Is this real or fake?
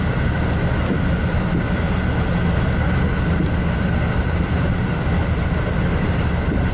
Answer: real